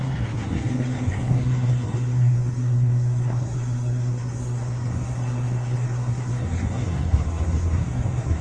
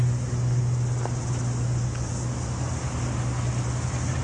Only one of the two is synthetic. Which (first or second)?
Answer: first